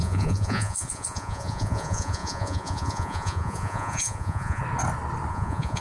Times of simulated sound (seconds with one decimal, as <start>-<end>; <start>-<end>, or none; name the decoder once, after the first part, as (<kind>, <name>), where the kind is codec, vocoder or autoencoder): 0.0-4.6 (vocoder, Vocos); 5.3-5.8